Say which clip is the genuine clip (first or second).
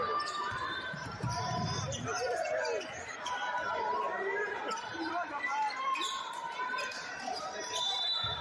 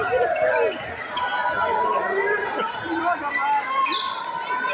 second